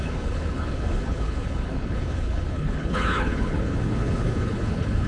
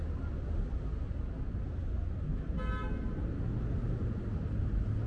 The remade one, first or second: first